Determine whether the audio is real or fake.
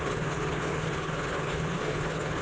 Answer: fake